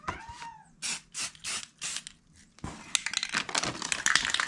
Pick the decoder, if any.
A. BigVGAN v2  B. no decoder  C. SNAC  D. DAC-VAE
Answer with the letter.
B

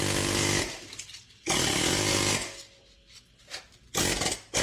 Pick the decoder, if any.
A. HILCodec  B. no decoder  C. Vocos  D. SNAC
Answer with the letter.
B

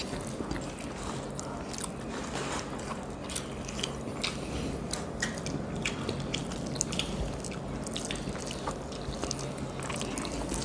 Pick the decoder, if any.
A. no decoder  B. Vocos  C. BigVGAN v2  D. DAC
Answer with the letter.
A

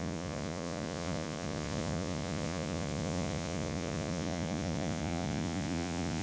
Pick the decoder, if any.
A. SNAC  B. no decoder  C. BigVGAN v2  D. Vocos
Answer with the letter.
D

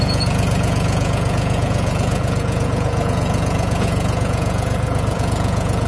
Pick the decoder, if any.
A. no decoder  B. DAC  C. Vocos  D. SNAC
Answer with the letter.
C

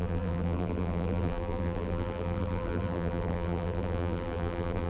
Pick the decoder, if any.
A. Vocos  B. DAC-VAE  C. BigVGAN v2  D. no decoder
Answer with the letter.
C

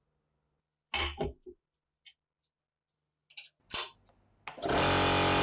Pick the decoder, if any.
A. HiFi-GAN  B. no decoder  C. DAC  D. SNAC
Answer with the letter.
B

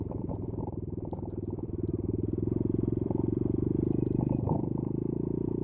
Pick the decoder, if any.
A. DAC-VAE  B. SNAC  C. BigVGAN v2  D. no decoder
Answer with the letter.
C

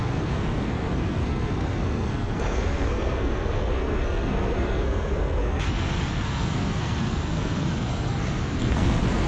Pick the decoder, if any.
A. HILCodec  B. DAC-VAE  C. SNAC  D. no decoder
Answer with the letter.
C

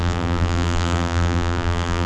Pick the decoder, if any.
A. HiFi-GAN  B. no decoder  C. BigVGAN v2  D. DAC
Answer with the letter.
C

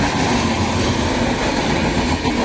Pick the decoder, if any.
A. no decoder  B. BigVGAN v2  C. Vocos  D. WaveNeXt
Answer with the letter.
A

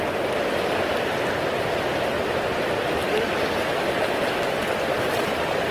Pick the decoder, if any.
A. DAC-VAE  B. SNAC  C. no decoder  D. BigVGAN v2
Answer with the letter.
C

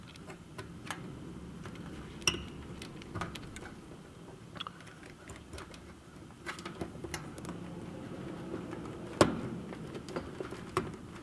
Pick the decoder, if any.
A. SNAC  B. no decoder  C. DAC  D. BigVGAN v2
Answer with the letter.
B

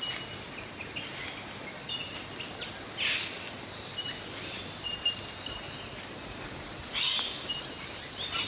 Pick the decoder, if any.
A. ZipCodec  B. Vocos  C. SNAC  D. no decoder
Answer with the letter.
D